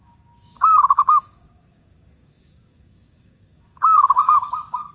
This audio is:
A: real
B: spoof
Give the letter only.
B